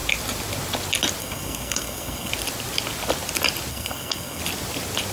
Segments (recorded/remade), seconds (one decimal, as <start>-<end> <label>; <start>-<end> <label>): 0.0-1.2 recorded; 1.2-2.3 remade; 2.3-3.7 recorded; 3.7-4.4 remade; 4.4-5.1 recorded